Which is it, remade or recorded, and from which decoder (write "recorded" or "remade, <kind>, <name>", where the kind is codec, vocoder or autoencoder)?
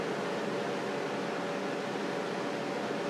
recorded